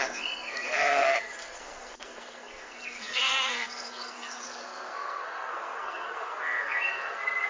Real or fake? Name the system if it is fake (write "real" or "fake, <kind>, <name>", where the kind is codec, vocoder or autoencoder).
fake, codec, SNAC